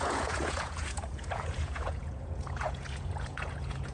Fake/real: fake